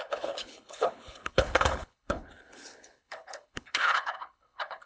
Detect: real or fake fake